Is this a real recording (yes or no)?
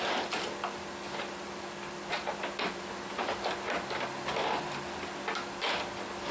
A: yes